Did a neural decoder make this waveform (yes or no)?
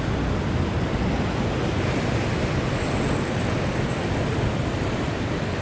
no